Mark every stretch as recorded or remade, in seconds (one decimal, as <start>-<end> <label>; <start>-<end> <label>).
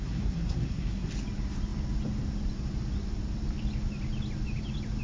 0.0-1.1 remade; 1.1-5.0 recorded